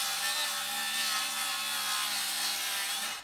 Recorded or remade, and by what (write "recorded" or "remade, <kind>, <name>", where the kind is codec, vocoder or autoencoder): recorded